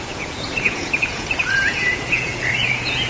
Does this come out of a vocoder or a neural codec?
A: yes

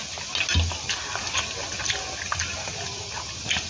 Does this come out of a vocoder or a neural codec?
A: no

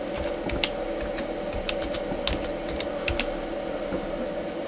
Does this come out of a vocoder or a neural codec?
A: no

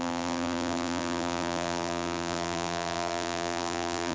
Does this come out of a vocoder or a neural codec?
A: yes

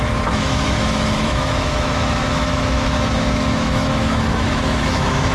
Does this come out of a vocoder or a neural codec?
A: yes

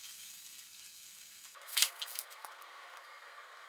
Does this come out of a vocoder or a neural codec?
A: yes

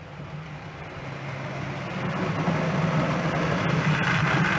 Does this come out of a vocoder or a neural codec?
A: no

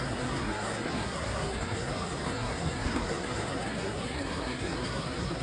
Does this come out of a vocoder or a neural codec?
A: yes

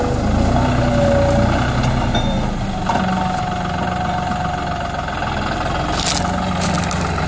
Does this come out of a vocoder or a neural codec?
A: no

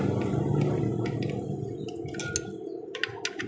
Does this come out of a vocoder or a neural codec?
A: no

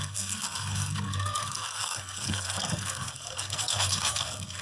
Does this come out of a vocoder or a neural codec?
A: yes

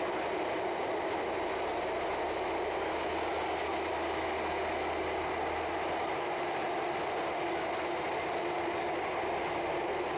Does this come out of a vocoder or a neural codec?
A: no